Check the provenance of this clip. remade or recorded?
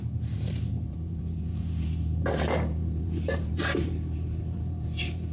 remade